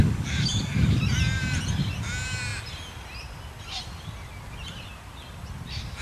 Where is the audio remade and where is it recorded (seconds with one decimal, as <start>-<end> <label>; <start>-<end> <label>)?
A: 0.0-1.0 remade; 1.0-6.0 recorded